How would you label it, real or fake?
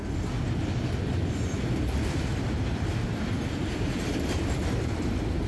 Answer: real